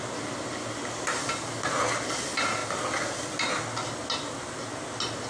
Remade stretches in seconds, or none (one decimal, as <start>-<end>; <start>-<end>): none